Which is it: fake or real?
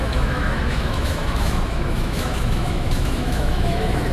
fake